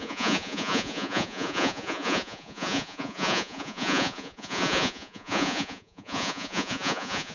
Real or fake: fake